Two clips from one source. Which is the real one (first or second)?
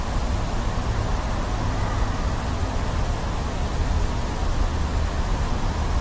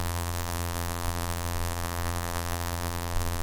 first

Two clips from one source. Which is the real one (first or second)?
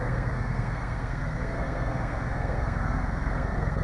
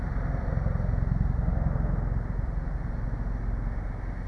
second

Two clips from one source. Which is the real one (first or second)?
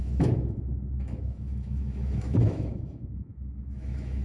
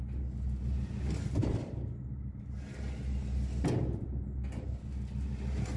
second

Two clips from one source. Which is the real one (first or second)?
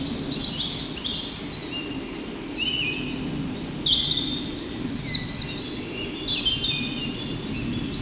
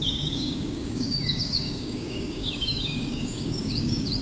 first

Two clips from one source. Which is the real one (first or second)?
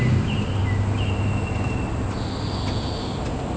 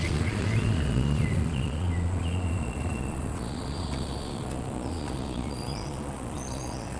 first